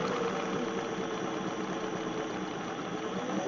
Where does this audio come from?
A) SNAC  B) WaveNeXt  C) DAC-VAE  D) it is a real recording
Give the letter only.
D